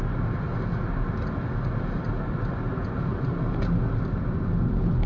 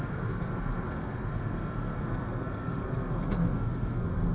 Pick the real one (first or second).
first